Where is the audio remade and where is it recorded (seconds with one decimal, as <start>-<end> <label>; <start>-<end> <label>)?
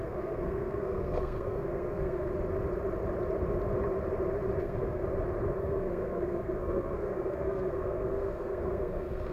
0.0-2.3 remade; 2.3-4.6 recorded; 4.6-5.0 remade; 5.0-5.6 recorded; 5.6-9.3 remade